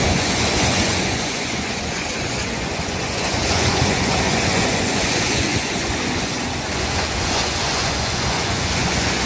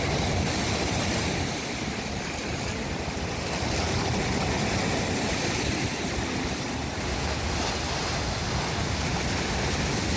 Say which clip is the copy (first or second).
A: first